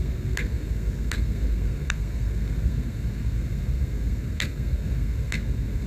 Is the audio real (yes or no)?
no